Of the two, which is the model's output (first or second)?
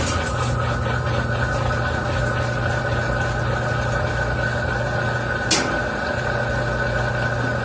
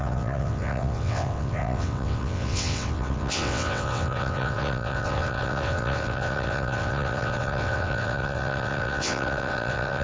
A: second